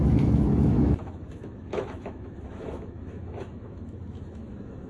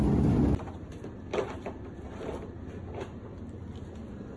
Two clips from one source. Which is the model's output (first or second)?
first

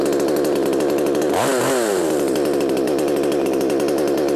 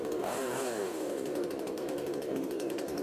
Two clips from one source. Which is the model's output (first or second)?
second